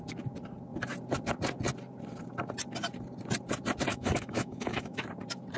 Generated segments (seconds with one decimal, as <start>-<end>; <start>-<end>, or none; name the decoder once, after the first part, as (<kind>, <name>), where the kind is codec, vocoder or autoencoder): 3.9-5.1 (autoencoder, DAC-VAE)